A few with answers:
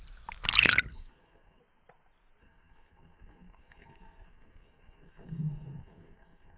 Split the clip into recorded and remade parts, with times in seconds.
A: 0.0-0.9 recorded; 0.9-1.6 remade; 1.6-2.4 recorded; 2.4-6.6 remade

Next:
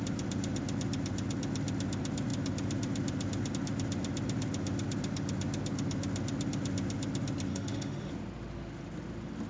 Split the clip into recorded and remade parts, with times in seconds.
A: 0.0-7.5 recorded; 7.5-8.1 remade; 8.1-9.5 recorded